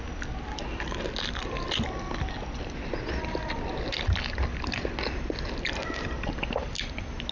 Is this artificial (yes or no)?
no